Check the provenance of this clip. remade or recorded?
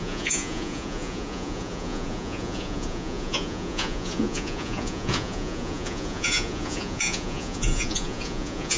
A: remade